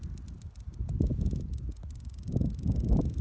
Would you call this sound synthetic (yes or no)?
no